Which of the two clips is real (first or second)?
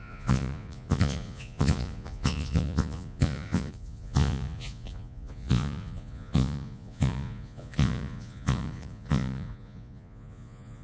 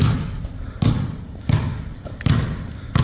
second